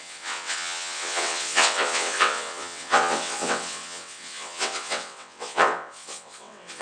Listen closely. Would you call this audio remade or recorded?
remade